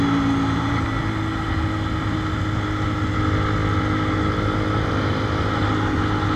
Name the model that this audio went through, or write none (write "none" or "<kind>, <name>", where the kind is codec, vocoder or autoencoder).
none